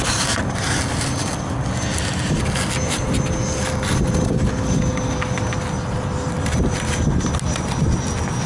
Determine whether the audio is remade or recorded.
recorded